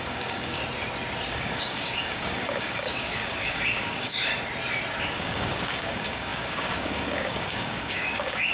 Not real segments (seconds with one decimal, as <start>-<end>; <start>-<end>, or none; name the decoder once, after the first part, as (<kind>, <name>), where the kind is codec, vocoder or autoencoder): 0.0-0.6 (codec, DAC); 1.3-4.3; 5.1-8.5